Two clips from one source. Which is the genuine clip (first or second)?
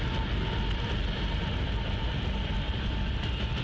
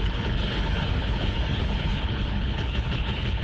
first